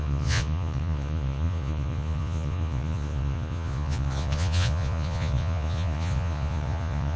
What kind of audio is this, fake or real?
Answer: fake